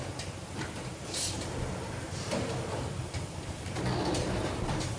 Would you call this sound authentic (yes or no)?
yes